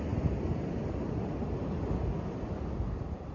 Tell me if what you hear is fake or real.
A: real